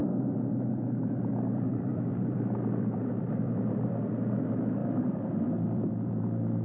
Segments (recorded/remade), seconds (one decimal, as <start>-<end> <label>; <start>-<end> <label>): 0.0-3.9 remade; 3.9-4.8 recorded; 4.8-6.1 remade; 6.1-6.6 recorded